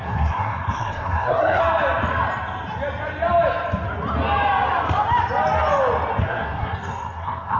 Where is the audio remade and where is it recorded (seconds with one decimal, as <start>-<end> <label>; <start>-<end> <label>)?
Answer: 0.0-1.6 remade; 1.6-6.2 recorded; 6.2-7.6 remade